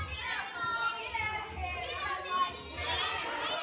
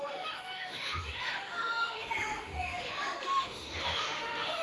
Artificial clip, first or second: second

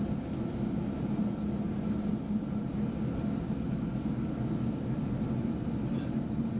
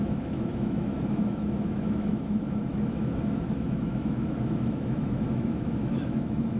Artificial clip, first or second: second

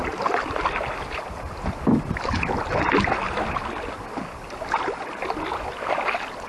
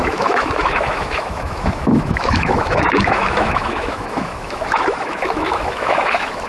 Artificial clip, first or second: second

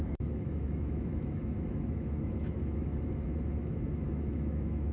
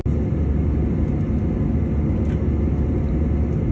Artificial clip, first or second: first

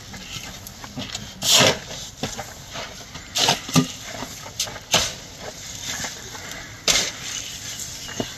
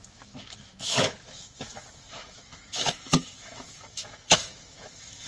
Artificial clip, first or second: second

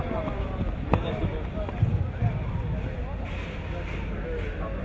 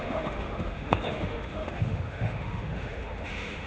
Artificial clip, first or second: second